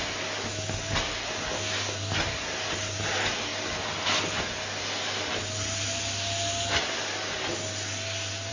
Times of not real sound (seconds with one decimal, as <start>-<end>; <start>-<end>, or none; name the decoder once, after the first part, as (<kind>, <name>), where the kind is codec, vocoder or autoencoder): none